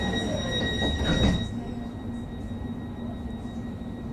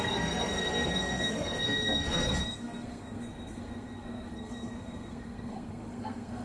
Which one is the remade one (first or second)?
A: second